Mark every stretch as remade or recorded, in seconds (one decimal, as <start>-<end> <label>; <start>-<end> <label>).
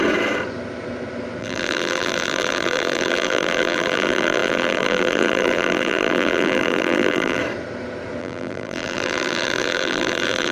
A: 0.0-1.4 recorded; 1.4-7.4 remade; 7.4-8.2 recorded; 8.2-10.5 remade